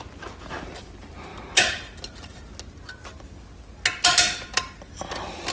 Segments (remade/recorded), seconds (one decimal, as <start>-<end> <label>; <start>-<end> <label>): 0.0-5.5 recorded